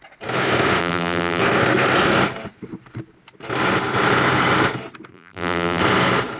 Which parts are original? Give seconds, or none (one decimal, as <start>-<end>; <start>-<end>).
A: 0.0-0.8; 1.4-5.1; 5.8-6.4

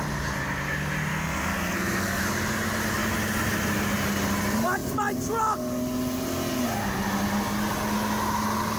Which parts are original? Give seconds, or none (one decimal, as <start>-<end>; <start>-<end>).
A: 0.0-1.1; 2.2-8.8

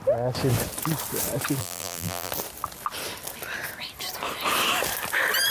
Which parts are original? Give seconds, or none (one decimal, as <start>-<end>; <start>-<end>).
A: 0.0-1.6; 2.3-5.5

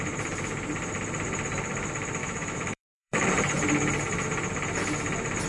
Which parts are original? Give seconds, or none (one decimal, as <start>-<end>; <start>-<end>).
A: 0.0-2.2; 3.3-5.5

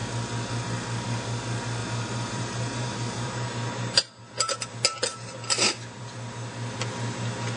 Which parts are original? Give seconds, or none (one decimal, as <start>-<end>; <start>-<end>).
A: 0.0-1.8; 4.2-7.6

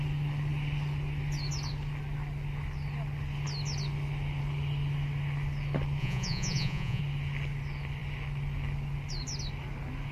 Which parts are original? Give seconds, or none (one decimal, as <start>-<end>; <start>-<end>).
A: 0.0-6.0; 7.0-10.1

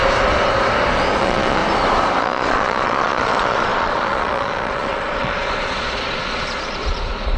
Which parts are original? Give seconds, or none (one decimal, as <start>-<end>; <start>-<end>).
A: 0.0-1.2; 1.6-2.2

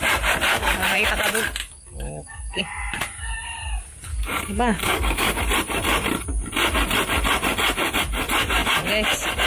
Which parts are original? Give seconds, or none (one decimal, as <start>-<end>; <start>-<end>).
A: 0.0-0.5; 1.1-1.6; 2.6-4.1; 5.4-9.5